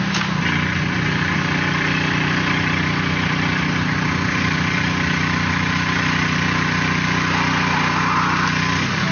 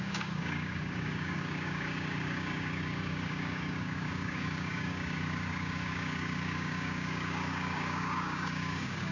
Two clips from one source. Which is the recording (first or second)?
first